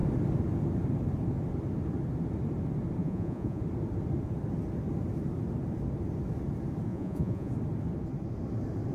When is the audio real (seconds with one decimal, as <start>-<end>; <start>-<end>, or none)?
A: 0.0-3.0; 3.6-6.9; 7.5-8.9